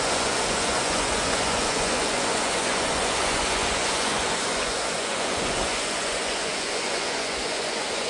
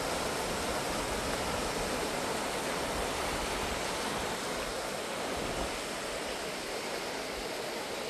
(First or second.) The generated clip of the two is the first